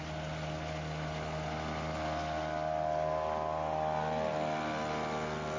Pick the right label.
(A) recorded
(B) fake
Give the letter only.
A